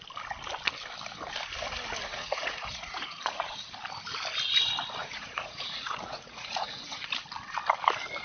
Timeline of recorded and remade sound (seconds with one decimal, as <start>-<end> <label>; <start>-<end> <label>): 0.0-2.1 recorded; 2.1-3.7 remade; 3.7-5.0 recorded; 5.0-7.1 remade; 7.1-8.2 recorded